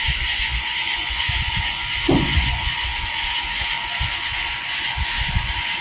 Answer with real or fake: fake